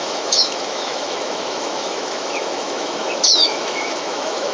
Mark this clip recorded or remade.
remade